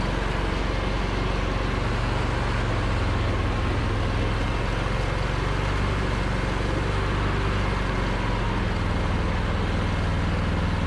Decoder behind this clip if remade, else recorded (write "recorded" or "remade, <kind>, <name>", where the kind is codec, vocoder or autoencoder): recorded